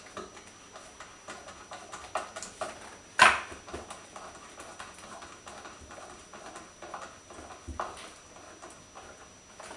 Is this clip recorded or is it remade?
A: recorded